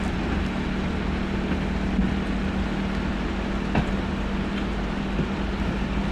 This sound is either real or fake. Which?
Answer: fake